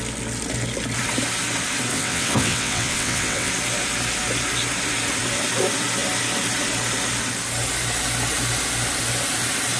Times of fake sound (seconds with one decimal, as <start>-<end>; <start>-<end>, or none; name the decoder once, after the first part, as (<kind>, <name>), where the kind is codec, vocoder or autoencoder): 1.9-3.5 (vocoder, WaveNeXt)